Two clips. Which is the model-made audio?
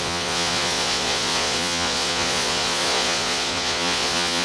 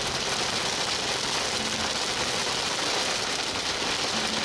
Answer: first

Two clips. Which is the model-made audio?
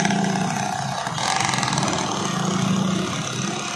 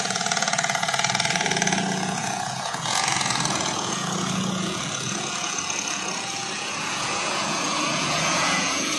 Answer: second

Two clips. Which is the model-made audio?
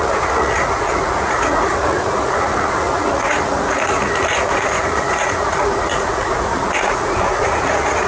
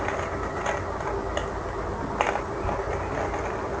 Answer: first